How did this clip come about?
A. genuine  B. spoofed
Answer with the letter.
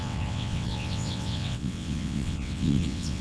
B